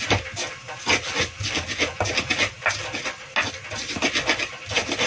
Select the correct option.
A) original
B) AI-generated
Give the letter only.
A